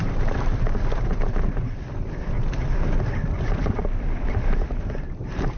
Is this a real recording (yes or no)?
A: no